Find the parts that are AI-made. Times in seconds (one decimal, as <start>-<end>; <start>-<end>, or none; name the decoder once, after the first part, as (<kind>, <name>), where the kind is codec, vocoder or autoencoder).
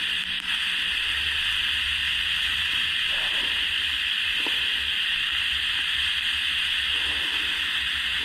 2.0-6.9 (vocoder, BigVGAN v2)